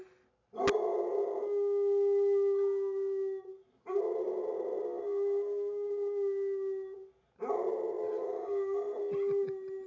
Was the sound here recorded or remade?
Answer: recorded